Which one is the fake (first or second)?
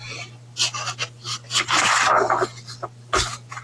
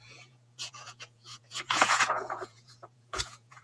second